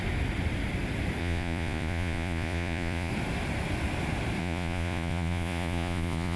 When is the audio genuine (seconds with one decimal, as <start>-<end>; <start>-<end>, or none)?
0.0-1.2; 3.1-4.4